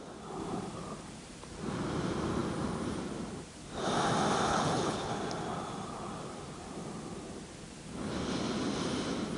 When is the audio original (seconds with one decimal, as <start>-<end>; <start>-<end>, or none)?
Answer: 0.0-4.5; 5.1-9.4